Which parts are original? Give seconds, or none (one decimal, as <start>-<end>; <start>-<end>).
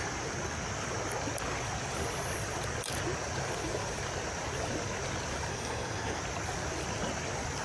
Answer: 0.0-5.5; 6.2-7.6